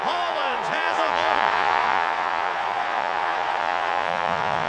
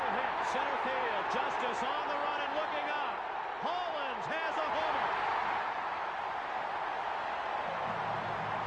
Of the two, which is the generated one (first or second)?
first